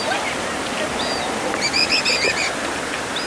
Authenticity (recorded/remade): recorded